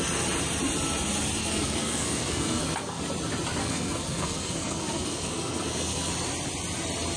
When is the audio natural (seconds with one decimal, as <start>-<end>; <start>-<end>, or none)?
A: 0.0-1.4; 3.0-3.6; 6.1-7.2